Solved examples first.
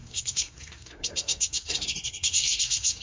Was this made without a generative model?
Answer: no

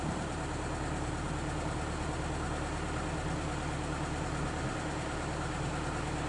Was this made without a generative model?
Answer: yes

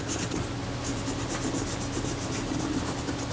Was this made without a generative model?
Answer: yes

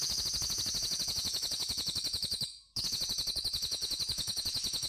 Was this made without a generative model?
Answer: no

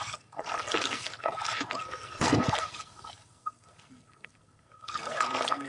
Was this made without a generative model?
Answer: no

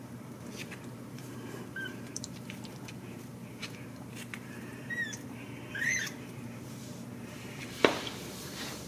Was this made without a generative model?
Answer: no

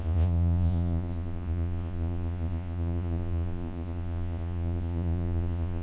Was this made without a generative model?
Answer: no